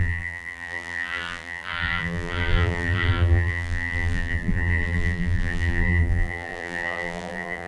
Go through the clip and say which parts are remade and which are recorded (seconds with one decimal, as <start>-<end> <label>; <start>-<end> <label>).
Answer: 0.0-7.7 remade